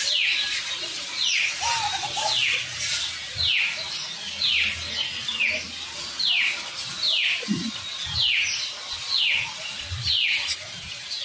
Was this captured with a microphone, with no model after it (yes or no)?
yes